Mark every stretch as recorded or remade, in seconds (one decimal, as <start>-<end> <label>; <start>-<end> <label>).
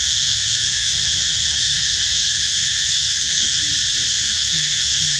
0.0-3.6 remade; 3.6-4.1 recorded; 4.1-5.2 remade